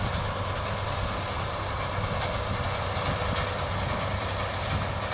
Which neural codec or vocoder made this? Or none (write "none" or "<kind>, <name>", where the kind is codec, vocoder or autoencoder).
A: none